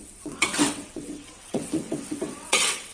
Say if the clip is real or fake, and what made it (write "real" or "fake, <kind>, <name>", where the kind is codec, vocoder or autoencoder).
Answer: fake, vocoder, WaveNeXt